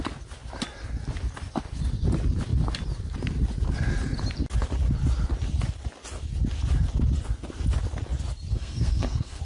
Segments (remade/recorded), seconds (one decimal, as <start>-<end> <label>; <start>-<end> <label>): 0.0-8.5 recorded; 8.5-9.4 remade